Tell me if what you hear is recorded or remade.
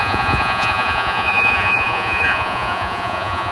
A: remade